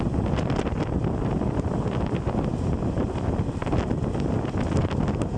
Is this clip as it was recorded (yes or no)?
yes